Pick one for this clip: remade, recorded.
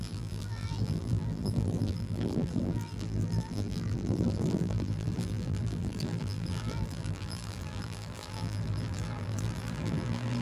remade